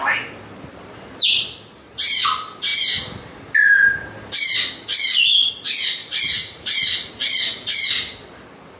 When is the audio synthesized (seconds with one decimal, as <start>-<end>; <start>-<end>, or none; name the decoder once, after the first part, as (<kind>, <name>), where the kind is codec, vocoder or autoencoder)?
6.0-7.1 (vocoder, Vocos)